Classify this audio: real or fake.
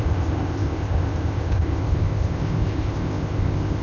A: fake